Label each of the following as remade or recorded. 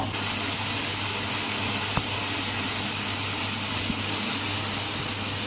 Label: recorded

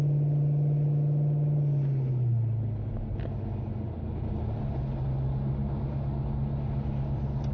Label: recorded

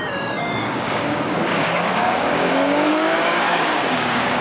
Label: remade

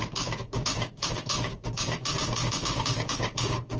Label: remade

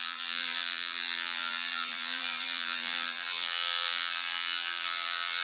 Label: remade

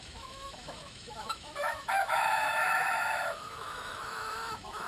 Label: remade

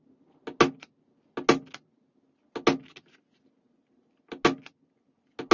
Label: recorded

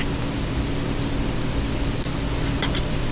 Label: recorded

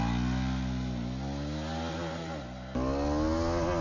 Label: recorded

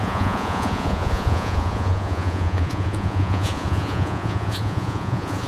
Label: remade